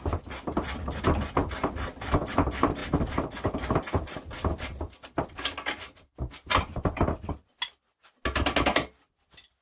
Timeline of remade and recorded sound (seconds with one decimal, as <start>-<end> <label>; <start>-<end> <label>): 0.0-9.6 recorded